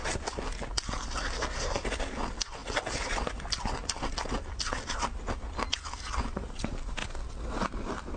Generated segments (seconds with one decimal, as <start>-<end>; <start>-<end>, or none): none